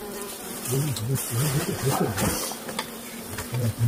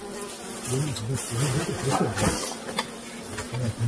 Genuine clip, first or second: second